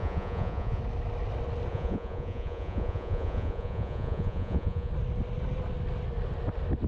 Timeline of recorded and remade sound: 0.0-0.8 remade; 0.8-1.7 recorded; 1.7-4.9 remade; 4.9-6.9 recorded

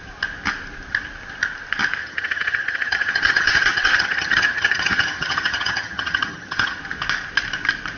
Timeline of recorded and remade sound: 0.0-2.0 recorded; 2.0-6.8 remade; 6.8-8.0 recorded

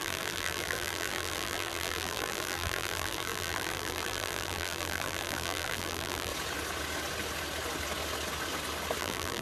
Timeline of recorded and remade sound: 0.0-6.3 remade; 6.3-9.0 recorded; 9.0-9.4 remade